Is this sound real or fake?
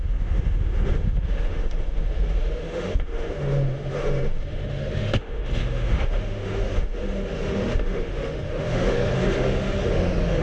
fake